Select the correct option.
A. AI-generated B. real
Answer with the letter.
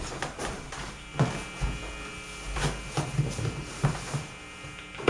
B